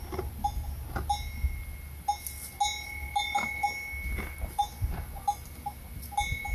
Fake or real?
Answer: real